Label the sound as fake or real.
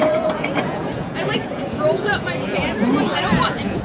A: fake